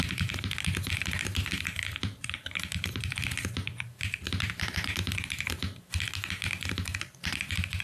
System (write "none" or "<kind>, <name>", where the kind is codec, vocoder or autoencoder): vocoder, BigVGAN v2